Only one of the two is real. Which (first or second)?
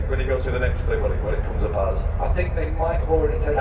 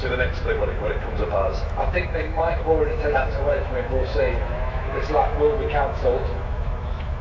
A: first